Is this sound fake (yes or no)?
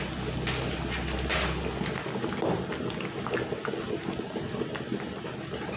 no